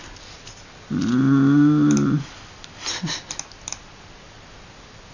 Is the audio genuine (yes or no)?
yes